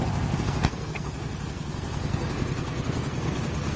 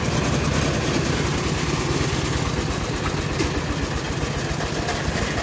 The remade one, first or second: first